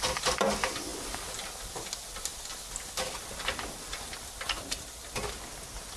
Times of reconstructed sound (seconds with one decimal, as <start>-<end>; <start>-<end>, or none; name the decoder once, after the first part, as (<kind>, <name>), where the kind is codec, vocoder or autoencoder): none